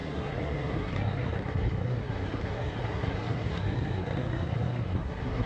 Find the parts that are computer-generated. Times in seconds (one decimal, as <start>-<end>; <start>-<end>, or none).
0.0-5.5